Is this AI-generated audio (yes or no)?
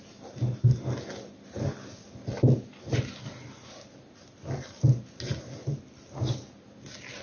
no